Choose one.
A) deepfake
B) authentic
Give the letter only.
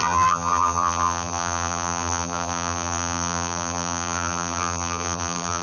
A